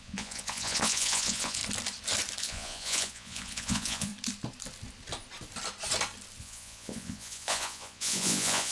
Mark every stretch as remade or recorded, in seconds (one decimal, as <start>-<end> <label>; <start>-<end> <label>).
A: 0.0-1.6 remade; 1.6-2.4 recorded; 2.4-4.1 remade; 4.1-6.4 recorded; 6.4-8.7 remade